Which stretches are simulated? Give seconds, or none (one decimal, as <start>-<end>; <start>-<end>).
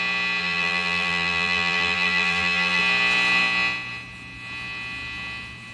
0.4-2.8